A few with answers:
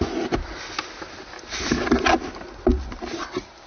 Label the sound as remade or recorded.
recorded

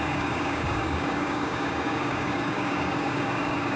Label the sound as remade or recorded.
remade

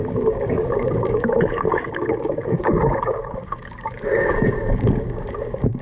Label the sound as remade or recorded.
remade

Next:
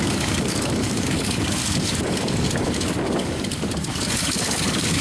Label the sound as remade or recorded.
remade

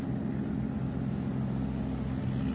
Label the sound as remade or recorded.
recorded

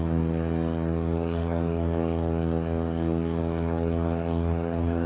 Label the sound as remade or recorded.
remade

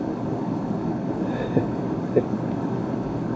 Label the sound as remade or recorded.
remade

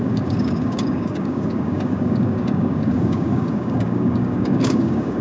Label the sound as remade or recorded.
remade